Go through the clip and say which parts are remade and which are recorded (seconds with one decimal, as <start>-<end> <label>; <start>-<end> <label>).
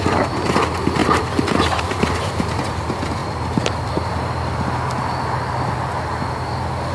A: 0.0-1.0 recorded; 1.0-2.1 remade; 2.1-3.2 recorded; 3.2-5.4 remade; 5.4-6.9 recorded